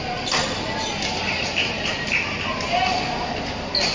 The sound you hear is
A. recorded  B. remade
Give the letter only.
A